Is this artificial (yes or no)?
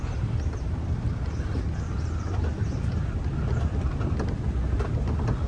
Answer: no